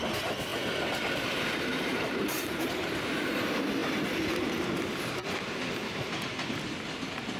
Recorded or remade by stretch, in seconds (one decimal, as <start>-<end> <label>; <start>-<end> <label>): 0.0-1.9 recorded; 1.9-3.3 remade; 3.3-7.4 recorded